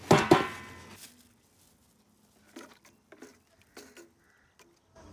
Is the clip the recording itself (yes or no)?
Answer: yes